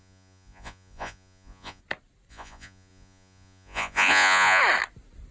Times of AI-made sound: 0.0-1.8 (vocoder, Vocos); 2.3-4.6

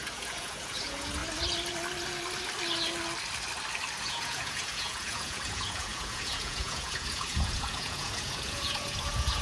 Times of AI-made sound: 0.0-1.2 (vocoder, Vocos); 4.0-9.4

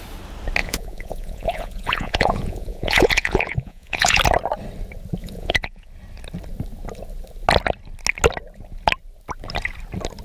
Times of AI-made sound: 0.6-4.2 (vocoder, Vocos); 5.2-5.9

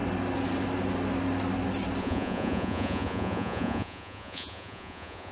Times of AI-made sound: 2.0-5.3 (vocoder, Vocos)